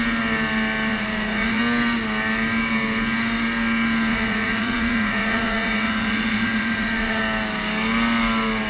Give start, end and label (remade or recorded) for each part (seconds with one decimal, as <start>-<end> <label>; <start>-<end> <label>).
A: 0.0-0.9 recorded; 0.9-1.6 remade; 1.6-4.1 recorded; 4.1-7.2 remade; 7.2-8.7 recorded

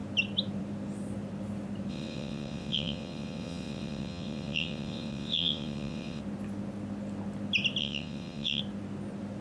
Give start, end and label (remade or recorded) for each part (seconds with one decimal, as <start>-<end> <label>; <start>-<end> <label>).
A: 0.0-1.9 recorded; 1.9-6.2 remade; 6.2-7.8 recorded; 7.8-8.6 remade; 8.6-9.4 recorded

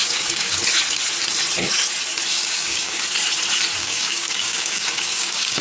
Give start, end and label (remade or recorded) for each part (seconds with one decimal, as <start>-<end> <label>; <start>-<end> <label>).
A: 0.0-0.6 remade; 0.6-2.3 recorded; 2.3-3.0 remade; 3.0-3.8 recorded; 3.8-5.6 remade

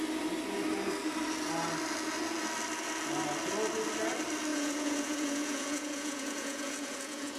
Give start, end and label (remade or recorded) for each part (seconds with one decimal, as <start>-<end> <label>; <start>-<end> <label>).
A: 0.0-4.5 recorded; 4.5-7.4 remade

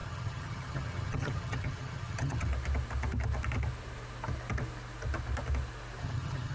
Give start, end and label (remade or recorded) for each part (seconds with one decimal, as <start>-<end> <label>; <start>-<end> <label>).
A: 0.0-2.5 remade; 2.5-6.0 recorded; 6.0-6.5 remade

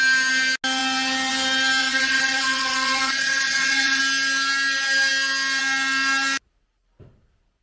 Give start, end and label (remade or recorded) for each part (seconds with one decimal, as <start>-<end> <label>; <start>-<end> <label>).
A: 0.0-1.8 recorded; 1.8-4.0 remade; 4.0-7.6 recorded